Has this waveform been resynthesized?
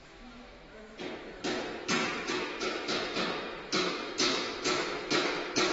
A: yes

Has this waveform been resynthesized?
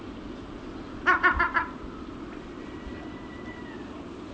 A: no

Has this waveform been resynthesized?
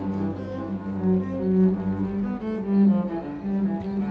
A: no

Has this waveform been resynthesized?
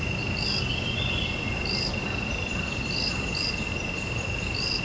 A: no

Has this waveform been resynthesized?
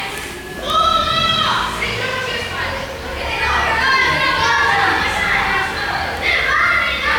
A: no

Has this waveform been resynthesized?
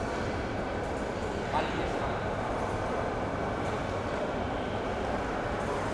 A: no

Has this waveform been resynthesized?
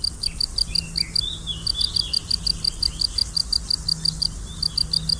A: no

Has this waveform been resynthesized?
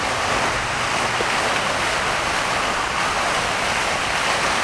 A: no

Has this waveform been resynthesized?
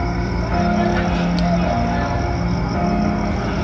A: no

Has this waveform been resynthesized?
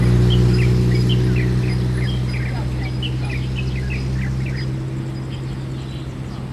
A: no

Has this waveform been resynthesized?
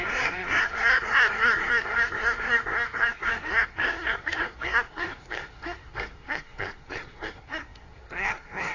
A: yes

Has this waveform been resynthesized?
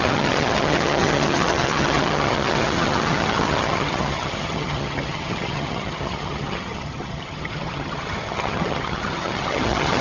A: yes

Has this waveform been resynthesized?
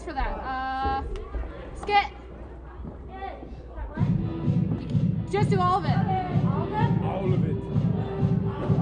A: no